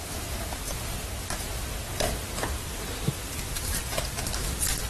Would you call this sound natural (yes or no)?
yes